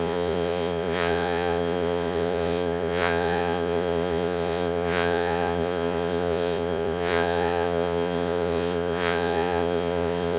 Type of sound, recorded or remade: remade